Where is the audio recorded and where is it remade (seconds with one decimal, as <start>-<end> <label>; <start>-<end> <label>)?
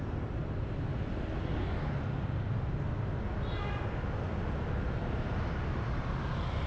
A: 0.0-6.7 recorded